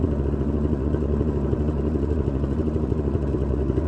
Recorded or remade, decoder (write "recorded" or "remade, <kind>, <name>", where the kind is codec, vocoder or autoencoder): remade, vocoder, Vocos